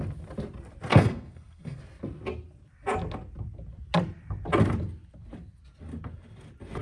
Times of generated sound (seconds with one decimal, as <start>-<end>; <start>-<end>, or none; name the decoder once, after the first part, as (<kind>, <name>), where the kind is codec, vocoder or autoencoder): 0.9-1.8 (codec, SNAC)